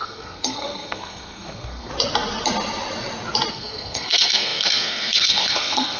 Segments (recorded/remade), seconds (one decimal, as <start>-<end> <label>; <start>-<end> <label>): 0.0-1.9 remade; 1.9-3.5 recorded; 3.5-6.0 remade